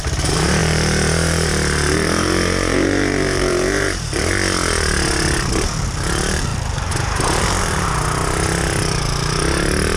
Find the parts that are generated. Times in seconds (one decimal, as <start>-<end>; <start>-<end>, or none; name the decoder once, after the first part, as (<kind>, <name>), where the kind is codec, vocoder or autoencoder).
0.6-4.3 (vocoder, BigVGAN v2); 6.5-7.4